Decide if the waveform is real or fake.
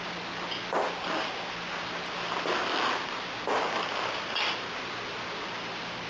real